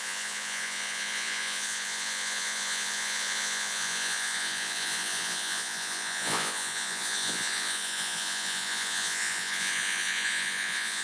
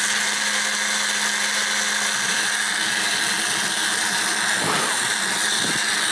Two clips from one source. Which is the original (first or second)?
second